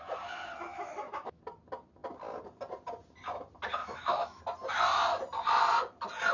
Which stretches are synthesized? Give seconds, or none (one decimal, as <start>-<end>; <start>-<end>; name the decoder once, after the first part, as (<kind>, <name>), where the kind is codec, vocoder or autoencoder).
0.7-1.4 (autoencoder, DAC-VAE); 3.8-4.4